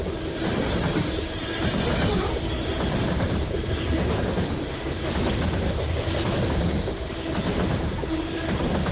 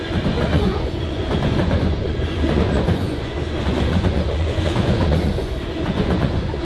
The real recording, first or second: first